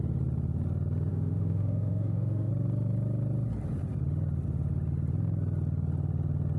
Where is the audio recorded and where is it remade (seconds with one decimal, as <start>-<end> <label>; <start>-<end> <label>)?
0.0-1.1 recorded; 1.1-2.5 remade; 2.5-6.6 recorded